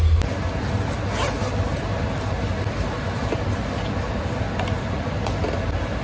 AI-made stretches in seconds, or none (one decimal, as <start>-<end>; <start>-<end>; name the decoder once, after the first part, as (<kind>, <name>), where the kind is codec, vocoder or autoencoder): none